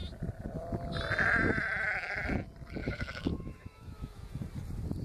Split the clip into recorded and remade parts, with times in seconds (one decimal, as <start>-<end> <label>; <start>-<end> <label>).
0.0-2.8 recorded; 2.8-4.3 remade; 4.3-5.0 recorded